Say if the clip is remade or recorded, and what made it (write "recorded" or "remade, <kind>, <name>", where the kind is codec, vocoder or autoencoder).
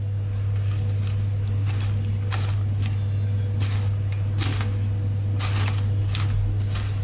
recorded